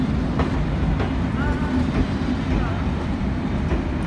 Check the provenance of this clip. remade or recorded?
remade